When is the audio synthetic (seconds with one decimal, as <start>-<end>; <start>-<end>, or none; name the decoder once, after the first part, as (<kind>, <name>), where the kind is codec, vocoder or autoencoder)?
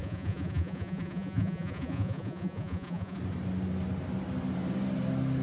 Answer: 0.0-3.2 (vocoder, Vocos)